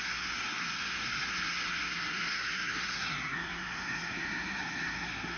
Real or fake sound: fake